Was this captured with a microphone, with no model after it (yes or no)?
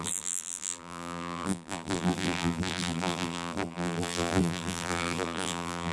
no